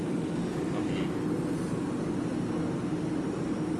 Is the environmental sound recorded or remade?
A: recorded